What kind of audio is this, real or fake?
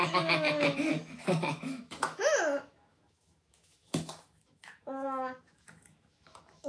fake